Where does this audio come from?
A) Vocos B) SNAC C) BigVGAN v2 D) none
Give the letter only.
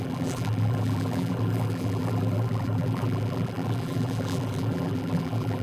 C